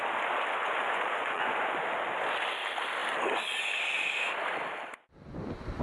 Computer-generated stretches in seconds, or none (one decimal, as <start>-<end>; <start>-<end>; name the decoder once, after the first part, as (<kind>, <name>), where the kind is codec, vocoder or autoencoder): 0.6-1.8 (vocoder, Vocos)